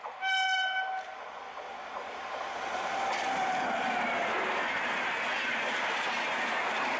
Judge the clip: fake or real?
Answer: real